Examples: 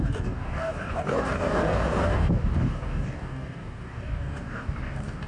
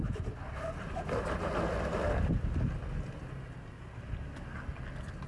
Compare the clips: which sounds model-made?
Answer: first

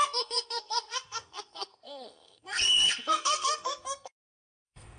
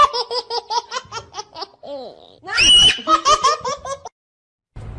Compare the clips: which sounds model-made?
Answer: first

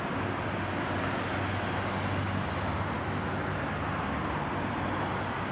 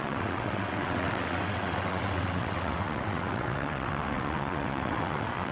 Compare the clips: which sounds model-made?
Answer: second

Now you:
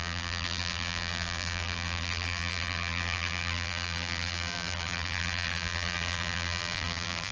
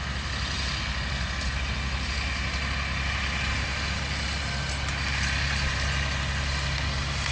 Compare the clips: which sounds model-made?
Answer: first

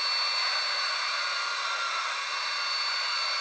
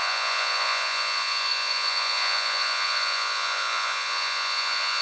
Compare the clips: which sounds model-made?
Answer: second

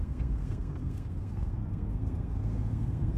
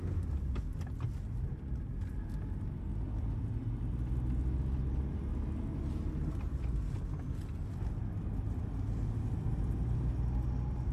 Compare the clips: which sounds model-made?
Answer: first